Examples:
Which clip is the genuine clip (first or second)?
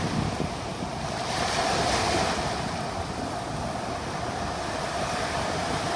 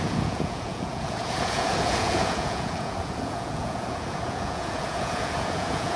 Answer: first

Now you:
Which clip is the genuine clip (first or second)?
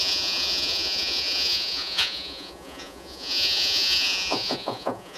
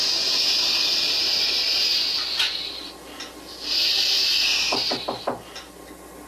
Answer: second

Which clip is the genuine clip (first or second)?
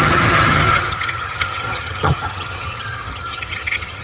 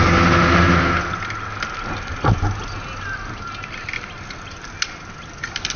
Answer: second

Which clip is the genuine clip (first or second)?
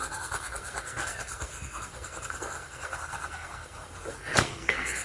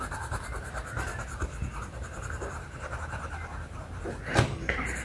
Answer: second